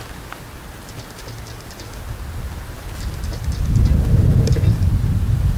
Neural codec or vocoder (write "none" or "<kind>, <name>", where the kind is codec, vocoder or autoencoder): none